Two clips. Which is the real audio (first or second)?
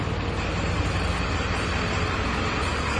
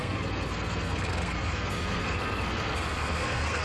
first